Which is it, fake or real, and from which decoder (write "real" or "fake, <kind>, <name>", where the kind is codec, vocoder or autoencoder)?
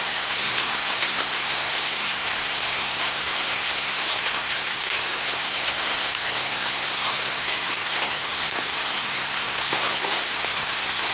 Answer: fake, codec, SNAC